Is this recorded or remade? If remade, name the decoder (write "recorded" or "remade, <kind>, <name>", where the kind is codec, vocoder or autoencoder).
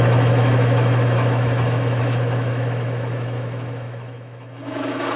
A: remade, autoencoder, DAC-VAE